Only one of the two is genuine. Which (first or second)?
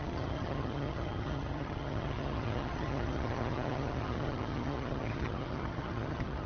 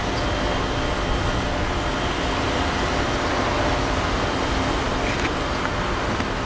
second